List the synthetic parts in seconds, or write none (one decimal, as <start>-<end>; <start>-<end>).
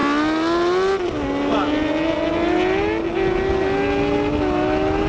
none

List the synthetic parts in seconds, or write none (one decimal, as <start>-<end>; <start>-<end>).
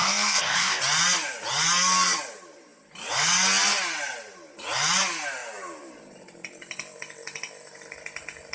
0.0-0.8